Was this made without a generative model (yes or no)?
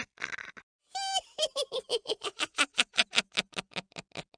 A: yes